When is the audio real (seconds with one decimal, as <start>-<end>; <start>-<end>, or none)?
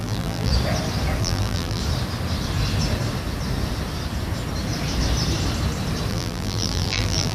0.5-1.2; 1.8-6.1